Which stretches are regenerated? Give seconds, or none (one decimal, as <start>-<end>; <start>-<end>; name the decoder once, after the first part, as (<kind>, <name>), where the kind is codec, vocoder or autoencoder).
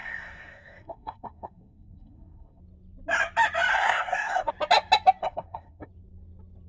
0.0-2.6 (codec, SNAC); 3.7-4.5; 5.2-5.9